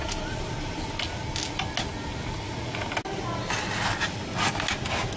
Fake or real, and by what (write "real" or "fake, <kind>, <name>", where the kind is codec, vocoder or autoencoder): real